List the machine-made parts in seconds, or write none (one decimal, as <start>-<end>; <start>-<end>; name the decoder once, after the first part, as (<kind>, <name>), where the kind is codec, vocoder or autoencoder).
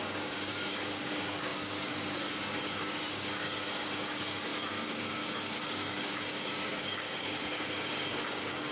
0.0-8.7 (codec, DAC)